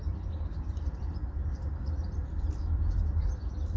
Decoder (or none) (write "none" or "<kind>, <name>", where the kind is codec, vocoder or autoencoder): vocoder, BigVGAN v2